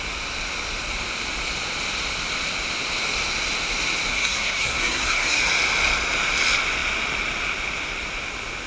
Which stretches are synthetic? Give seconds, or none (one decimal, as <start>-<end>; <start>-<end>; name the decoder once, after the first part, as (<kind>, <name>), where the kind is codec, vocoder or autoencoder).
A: 4.1-5.4 (codec, SNAC)

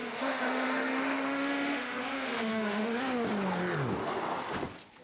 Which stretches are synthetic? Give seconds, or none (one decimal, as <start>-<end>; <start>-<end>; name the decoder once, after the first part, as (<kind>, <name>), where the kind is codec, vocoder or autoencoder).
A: 0.0-3.0 (autoencoder, DAC-VAE)

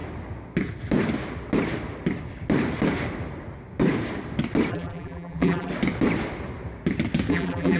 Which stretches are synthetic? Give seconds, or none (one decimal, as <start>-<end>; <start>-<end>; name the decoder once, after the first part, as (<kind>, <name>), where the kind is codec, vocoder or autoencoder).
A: 4.7-5.7 (vocoder, BigVGAN v2); 7.3-7.8

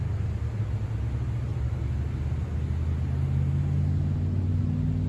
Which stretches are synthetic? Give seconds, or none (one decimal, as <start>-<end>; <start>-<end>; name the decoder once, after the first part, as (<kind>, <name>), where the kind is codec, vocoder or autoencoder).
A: none

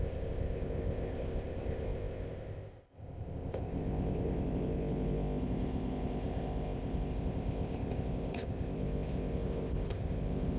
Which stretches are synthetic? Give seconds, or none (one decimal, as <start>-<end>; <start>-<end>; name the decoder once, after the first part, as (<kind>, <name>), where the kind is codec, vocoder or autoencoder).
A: 0.0-10.6 (codec, ZipCodec)

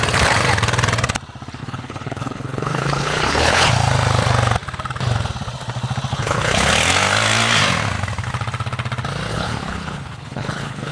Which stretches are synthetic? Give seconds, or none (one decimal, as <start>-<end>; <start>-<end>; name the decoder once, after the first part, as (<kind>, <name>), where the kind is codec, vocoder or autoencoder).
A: 1.6-3.7 (codec, HILCodec); 6.1-6.7; 9.3-10.9

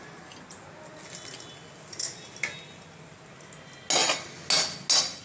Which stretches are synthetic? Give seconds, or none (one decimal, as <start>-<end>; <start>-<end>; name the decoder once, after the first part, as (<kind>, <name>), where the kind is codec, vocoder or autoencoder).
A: none